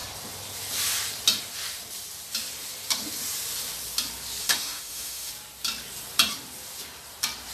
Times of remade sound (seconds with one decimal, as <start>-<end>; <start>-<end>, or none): 4.4-5.3